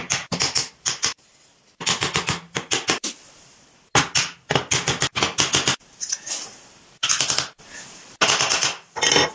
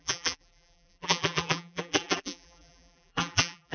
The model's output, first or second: second